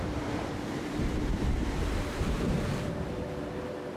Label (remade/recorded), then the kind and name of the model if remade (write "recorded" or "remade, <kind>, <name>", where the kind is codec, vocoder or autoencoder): remade, vocoder, BigVGAN v2